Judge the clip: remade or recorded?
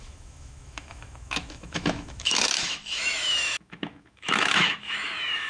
remade